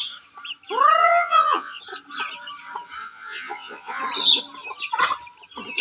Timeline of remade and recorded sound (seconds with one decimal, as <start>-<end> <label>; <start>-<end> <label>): 0.0-1.0 recorded; 1.0-1.8 remade; 1.8-3.0 recorded; 3.0-4.0 remade; 4.0-5.8 recorded